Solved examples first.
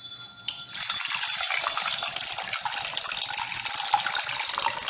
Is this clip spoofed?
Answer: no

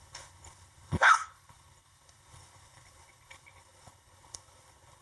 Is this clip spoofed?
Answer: yes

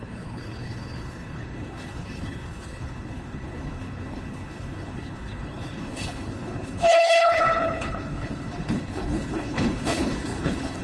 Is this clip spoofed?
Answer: yes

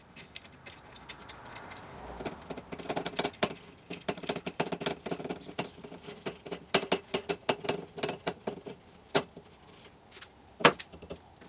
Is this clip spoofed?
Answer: no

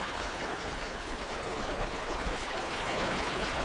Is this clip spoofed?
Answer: yes